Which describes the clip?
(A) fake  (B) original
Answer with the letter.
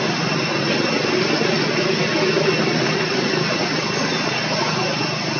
B